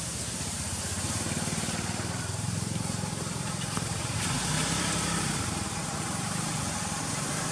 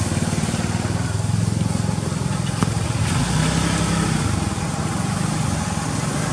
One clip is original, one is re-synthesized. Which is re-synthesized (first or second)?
first